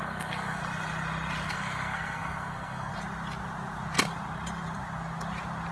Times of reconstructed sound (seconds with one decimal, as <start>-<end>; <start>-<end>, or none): 0.0-0.6; 1.5-2.9